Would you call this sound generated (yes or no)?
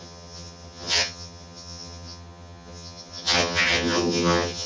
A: yes